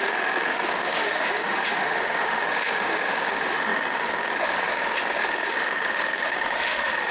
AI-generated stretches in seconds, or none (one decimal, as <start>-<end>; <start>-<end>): 0.0-7.1